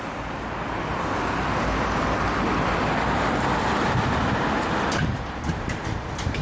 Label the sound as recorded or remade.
recorded